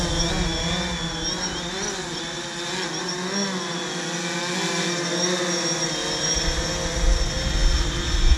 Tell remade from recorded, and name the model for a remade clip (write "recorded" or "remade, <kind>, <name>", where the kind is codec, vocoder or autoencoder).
recorded